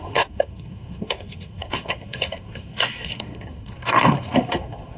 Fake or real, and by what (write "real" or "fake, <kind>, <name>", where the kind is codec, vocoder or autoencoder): fake, codec, SNAC